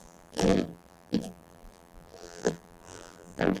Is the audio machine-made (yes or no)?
yes